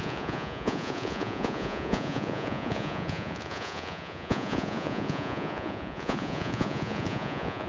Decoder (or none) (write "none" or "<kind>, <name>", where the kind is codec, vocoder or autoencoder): vocoder, Vocos